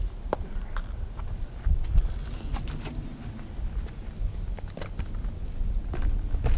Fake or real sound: real